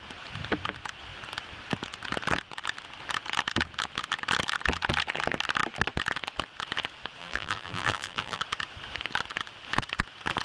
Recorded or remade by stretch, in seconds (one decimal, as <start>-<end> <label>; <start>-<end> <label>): 0.0-7.2 recorded; 7.2-8.4 remade; 8.4-10.4 recorded